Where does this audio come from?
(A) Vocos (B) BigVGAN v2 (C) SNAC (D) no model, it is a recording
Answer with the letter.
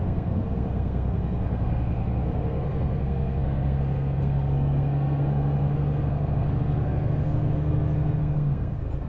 C